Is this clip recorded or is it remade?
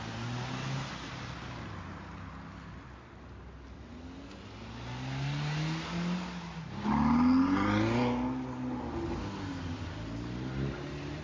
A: recorded